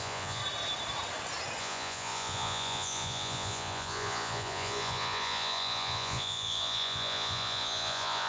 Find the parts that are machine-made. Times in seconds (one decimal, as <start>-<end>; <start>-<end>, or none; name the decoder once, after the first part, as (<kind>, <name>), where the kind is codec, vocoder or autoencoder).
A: 0.0-0.4 (vocoder, Vocos); 1.6-8.3